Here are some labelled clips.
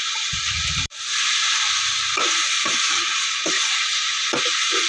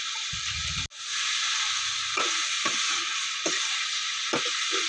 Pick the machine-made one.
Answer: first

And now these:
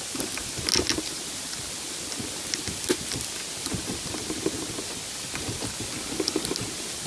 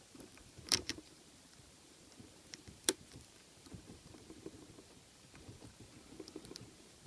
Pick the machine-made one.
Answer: second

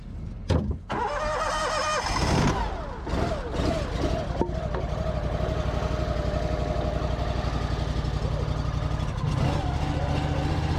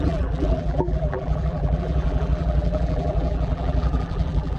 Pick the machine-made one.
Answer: second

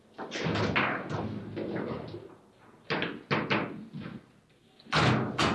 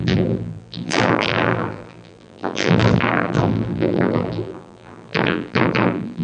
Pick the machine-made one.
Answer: second